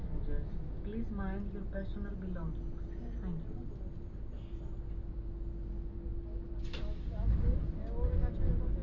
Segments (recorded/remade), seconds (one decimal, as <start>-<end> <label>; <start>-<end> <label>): 0.0-8.8 recorded